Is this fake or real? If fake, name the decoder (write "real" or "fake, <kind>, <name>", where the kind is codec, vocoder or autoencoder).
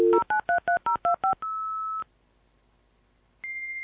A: real